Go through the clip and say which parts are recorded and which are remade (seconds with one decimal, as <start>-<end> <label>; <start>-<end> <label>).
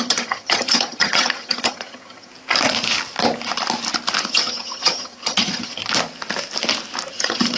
0.0-2.3 remade; 2.3-4.2 recorded; 4.2-5.8 remade; 5.8-7.1 recorded; 7.1-7.6 remade